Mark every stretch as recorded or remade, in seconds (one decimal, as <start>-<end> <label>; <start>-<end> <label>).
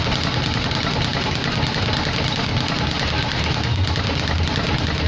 0.0-5.1 recorded